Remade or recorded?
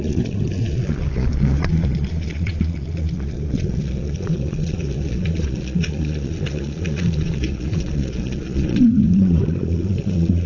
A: remade